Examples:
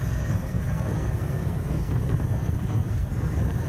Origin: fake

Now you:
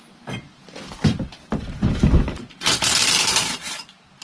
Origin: fake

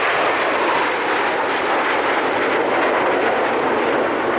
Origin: real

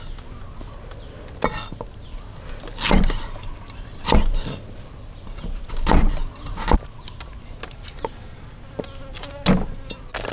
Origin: real